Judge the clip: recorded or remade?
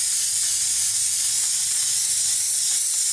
recorded